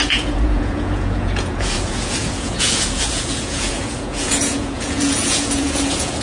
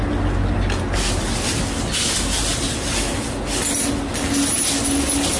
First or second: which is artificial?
first